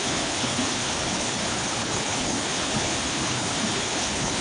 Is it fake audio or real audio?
fake